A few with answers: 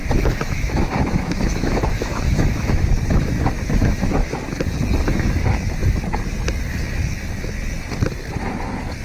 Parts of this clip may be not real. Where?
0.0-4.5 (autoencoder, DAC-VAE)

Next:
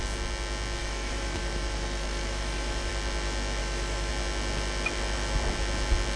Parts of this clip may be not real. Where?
0.8-2.9 (autoencoder, DAC-VAE); 3.6-4.1

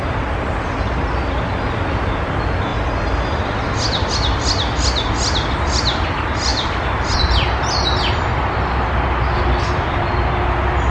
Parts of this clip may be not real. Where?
none

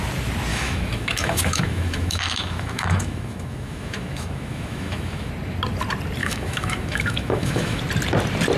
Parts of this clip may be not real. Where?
0.5-5.3 (autoencoder, DAC-VAE); 6.2-7.8